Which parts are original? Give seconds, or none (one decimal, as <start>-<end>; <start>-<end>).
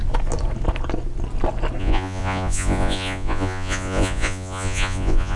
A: 0.0-1.8